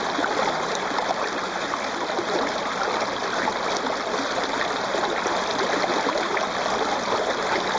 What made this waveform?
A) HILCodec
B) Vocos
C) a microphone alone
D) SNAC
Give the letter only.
C